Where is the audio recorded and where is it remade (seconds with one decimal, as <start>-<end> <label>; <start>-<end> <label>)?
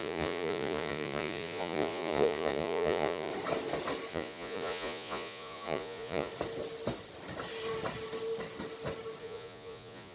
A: 0.0-3.3 remade; 3.3-4.1 recorded; 4.1-6.3 remade; 6.3-9.2 recorded; 9.2-10.1 remade